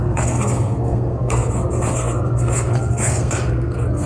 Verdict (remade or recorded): remade